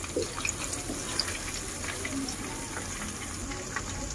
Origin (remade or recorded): recorded